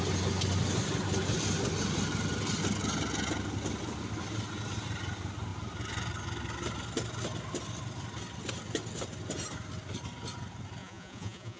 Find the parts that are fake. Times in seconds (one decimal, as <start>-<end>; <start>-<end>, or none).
10.8-11.6